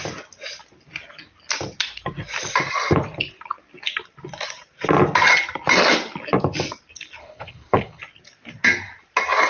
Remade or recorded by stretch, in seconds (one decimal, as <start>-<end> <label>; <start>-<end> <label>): 0.0-7.2 recorded; 7.2-8.0 remade; 8.0-9.5 recorded